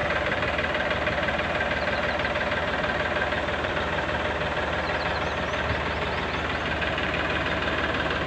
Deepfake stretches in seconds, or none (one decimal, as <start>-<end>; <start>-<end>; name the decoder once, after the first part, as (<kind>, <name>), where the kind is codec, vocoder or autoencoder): 0.0-3.7 (vocoder, BigVGAN v2)